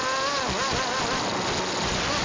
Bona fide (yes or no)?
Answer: yes